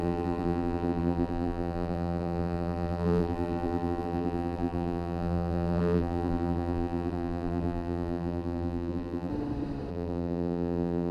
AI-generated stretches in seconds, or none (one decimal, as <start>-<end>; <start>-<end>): 0.0-9.3; 9.9-11.1